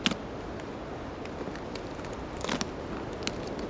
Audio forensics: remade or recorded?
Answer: recorded